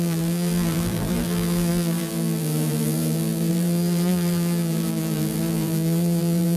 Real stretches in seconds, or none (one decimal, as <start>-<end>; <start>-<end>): none